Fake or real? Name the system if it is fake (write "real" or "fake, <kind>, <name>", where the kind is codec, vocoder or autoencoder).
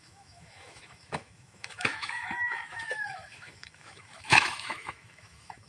fake, autoencoder, DAC-VAE